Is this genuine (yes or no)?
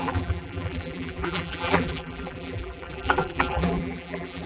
no